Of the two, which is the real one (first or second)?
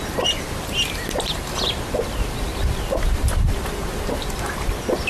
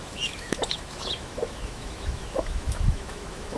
first